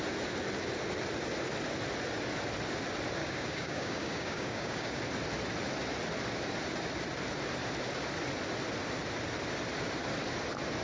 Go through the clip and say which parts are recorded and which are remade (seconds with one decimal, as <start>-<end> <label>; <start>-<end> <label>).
0.0-3.2 recorded; 3.2-5.0 remade; 5.0-10.8 recorded